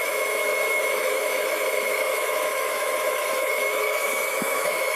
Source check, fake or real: fake